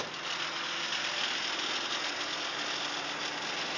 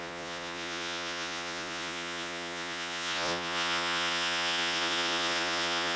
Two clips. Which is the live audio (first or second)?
first